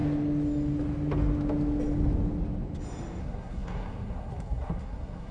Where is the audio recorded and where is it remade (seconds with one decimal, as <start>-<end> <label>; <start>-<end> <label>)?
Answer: 0.0-3.2 recorded; 3.2-5.3 remade